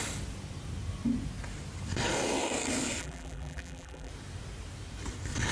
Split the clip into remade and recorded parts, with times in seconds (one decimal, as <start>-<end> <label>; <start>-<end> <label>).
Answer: 0.0-3.0 recorded; 3.0-4.1 remade; 4.1-5.5 recorded